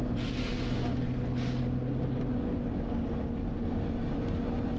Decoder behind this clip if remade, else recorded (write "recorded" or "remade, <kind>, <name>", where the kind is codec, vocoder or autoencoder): recorded